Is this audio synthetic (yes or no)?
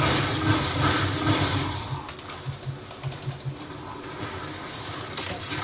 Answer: no